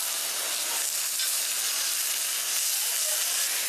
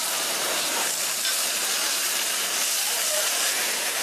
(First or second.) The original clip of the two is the first